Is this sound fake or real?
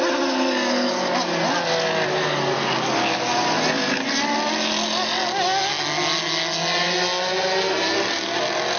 real